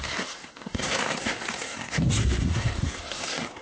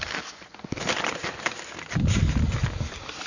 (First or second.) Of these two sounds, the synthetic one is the first